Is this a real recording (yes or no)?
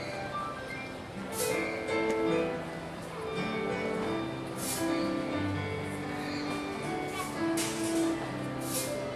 yes